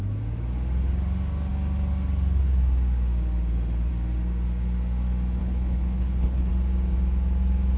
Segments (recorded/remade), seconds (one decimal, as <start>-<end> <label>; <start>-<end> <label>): 0.0-5.4 recorded; 5.4-6.5 remade; 6.5-7.8 recorded